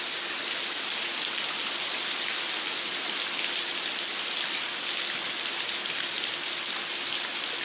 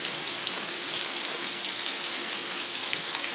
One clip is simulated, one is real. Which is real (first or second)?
first